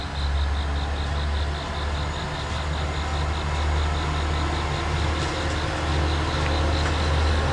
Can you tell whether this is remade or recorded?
recorded